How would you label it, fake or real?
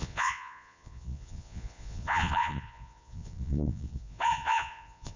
fake